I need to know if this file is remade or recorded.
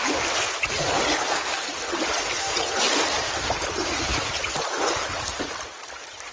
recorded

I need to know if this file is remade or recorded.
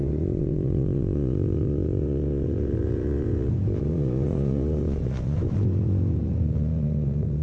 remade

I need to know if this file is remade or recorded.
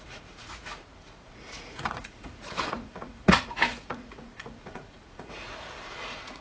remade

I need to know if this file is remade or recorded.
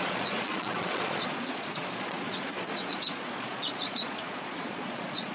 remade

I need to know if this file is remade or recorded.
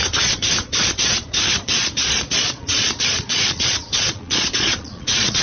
remade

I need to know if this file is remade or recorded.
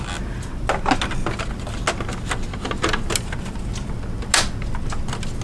recorded